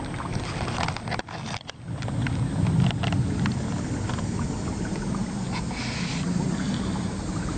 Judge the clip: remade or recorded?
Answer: recorded